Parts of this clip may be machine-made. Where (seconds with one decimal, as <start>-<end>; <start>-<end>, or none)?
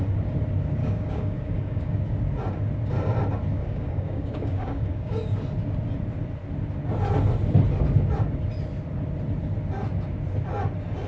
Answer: 0.8-2.0; 3.5-5.4